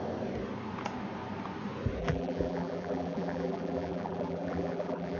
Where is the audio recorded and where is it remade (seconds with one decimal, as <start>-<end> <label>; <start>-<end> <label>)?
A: 0.0-2.0 recorded; 2.0-5.2 remade